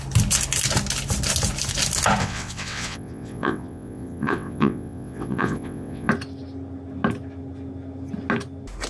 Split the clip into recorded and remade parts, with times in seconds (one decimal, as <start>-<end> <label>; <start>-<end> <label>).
0.0-2.2 recorded; 2.2-6.1 remade; 6.1-8.9 recorded

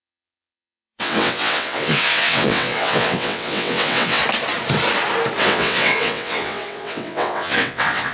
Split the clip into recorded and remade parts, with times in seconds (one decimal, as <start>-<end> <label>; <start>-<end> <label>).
0.0-4.2 remade; 4.2-5.4 recorded; 5.4-8.1 remade